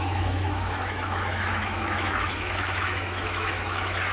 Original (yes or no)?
no